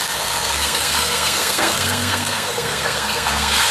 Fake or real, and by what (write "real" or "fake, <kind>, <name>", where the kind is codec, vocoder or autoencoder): fake, codec, SNAC